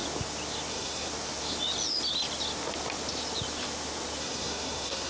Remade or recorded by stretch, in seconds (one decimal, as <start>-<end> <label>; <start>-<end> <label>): 0.0-0.7 recorded; 0.7-1.1 remade; 1.1-4.2 recorded; 4.2-5.1 remade